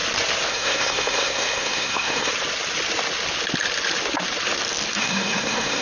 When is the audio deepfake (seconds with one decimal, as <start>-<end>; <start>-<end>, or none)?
0.5-2.3; 5.0-5.8